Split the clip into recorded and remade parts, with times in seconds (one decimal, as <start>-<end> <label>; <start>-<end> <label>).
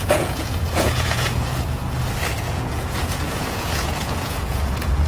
0.0-1.8 remade; 1.8-2.4 recorded; 2.4-5.1 remade